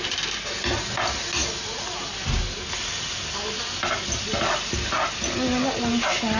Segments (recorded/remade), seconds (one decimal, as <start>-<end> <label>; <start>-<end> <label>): 0.0-6.4 recorded